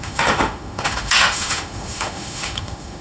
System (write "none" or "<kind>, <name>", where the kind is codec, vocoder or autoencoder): autoencoder, DAC-VAE